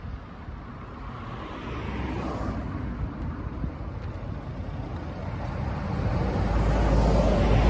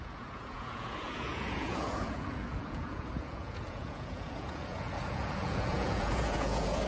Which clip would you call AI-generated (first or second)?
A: second